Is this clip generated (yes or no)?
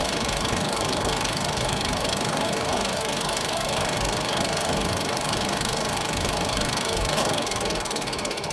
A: yes